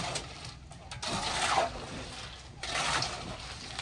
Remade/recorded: recorded